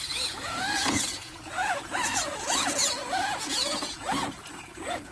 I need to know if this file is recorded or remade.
remade